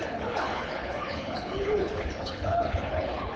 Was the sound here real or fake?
fake